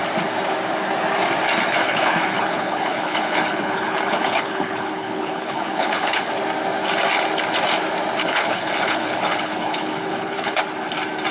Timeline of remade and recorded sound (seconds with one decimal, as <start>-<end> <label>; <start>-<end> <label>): 0.0-1.8 recorded; 1.8-6.3 remade; 6.3-8.2 recorded; 8.2-10.6 remade; 10.6-11.3 recorded

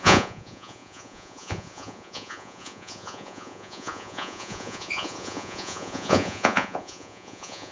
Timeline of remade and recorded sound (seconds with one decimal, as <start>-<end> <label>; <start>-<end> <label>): 0.0-7.7 remade

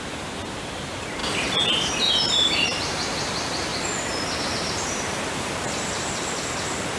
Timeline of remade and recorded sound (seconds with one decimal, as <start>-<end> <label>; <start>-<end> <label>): 0.0-1.2 remade; 1.2-1.9 recorded; 1.9-3.7 remade; 3.7-4.4 recorded; 4.4-7.0 remade

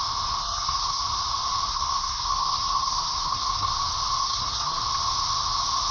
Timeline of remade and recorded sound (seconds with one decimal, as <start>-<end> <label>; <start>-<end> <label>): 0.0-0.4 recorded; 0.4-1.0 remade; 1.0-1.7 recorded; 1.7-3.7 remade; 3.7-4.2 recorded; 4.2-4.8 remade; 4.8-5.9 recorded

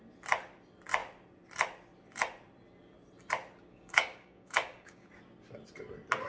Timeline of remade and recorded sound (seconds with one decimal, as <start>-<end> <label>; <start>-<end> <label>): 0.0-3.7 recorded; 3.7-5.1 remade; 5.1-6.3 recorded

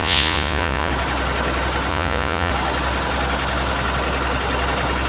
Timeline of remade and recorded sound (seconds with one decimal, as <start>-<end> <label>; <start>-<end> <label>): 0.0-0.9 remade; 0.9-1.9 recorded; 1.9-2.5 remade; 2.5-5.1 recorded

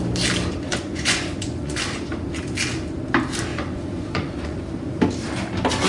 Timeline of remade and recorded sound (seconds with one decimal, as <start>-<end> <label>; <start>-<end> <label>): 0.0-0.7 recorded; 0.7-1.8 remade; 1.8-3.5 recorded; 3.5-4.6 remade; 4.6-5.9 recorded

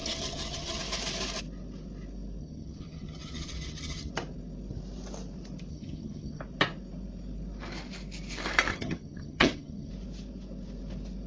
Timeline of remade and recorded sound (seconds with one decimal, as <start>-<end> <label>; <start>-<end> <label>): 0.0-0.8 remade; 0.8-2.4 recorded; 2.4-4.1 remade; 4.1-5.7 recorded; 5.7-6.4 remade; 6.4-8.7 recorded; 8.7-9.9 remade; 9.9-11.3 recorded